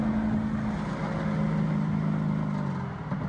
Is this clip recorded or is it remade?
recorded